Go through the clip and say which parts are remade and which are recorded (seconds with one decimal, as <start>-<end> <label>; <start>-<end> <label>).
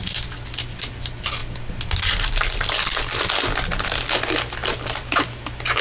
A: 0.0-5.8 recorded